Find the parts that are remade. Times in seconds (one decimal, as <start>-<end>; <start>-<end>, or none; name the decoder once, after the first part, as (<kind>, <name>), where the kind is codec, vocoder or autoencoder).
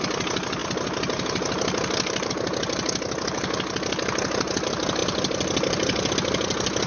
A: none